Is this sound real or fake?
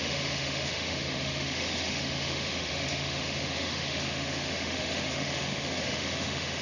fake